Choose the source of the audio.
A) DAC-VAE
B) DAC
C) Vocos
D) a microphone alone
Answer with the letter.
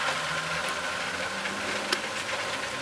D